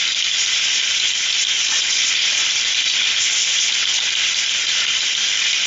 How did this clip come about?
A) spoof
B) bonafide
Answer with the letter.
B